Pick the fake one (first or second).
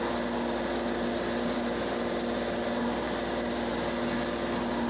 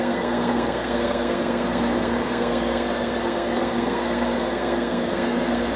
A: second